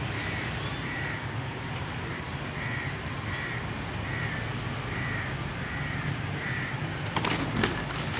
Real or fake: real